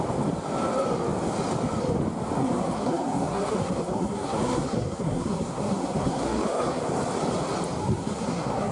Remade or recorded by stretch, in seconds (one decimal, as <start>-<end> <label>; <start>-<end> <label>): 0.0-2.4 recorded; 2.4-6.8 remade; 6.8-7.8 recorded; 7.8-8.7 remade